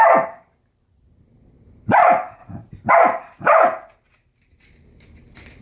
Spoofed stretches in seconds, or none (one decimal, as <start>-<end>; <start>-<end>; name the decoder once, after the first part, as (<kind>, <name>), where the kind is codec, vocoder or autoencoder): 2.4-2.9 (vocoder, BigVGAN v2)